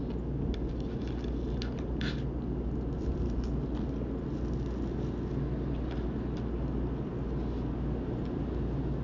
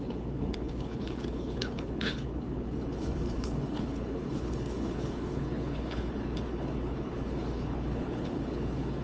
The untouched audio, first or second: first